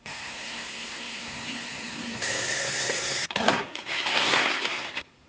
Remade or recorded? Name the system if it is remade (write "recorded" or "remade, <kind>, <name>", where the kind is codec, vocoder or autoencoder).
remade, codec, SNAC